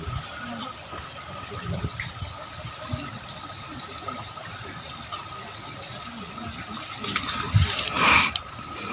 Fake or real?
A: real